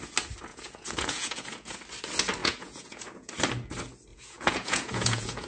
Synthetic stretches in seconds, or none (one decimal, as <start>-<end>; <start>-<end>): 0.5-1.8; 2.4-3.3; 4.1-5.5

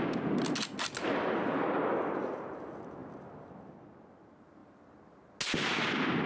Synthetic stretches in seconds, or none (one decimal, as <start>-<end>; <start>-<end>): none

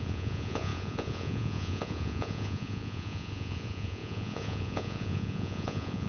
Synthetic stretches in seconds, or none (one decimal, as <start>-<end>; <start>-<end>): 0.0-6.1

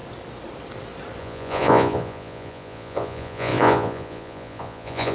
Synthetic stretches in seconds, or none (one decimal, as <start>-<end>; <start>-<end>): 1.2-5.1

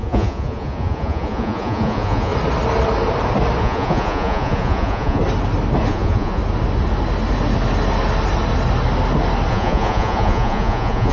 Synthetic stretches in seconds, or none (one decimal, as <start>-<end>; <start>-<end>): 0.0-2.3; 3.6-5.2; 5.9-6.4; 9.5-11.1

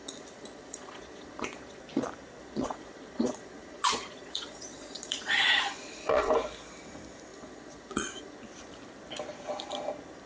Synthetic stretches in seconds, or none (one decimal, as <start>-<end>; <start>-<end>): 0.0-1.8; 2.4-6.3; 7.3-8.4

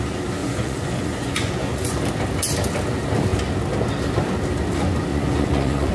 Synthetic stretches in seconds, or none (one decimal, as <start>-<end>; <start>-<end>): 0.4-2.0; 5.1-5.9